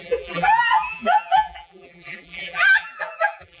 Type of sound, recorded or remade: remade